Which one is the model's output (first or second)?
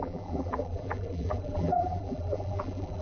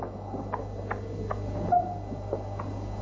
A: first